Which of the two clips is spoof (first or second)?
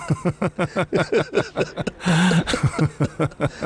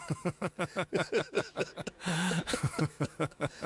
second